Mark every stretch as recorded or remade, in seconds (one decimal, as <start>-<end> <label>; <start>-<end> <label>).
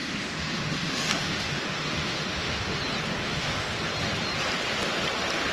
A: 0.0-2.8 remade; 2.8-3.2 recorded; 3.2-3.8 remade; 3.8-5.5 recorded